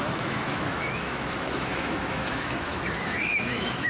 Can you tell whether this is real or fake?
fake